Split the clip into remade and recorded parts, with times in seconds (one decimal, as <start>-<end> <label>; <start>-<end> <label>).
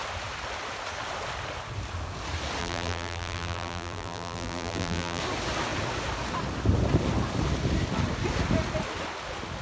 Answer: 0.0-2.6 recorded; 2.6-5.2 remade; 5.2-9.6 recorded